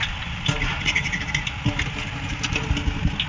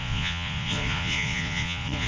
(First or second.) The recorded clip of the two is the first